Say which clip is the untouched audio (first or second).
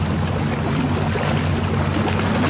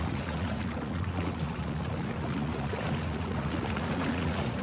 first